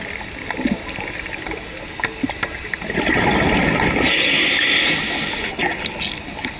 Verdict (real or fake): real